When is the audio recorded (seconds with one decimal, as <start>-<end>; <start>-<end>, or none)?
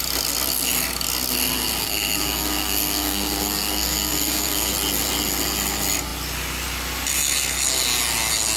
0.0-1.8; 4.7-8.6